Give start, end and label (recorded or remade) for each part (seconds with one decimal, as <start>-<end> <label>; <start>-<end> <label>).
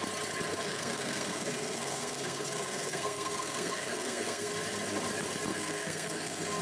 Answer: 0.0-0.5 recorded; 0.5-4.5 remade; 4.5-5.5 recorded; 5.5-6.6 remade